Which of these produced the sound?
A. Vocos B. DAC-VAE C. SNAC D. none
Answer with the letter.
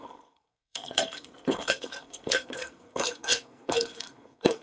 C